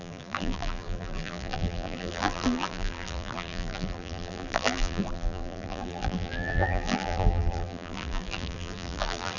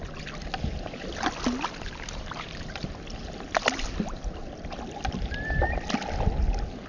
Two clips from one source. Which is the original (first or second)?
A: second